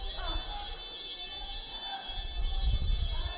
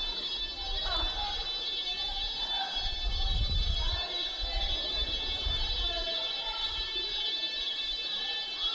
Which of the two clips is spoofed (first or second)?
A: second